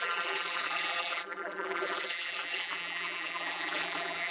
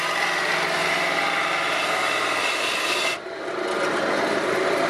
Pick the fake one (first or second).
first